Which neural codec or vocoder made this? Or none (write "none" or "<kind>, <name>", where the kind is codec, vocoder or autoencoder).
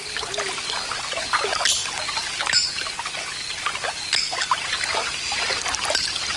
none